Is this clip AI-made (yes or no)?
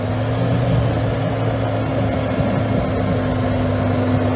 no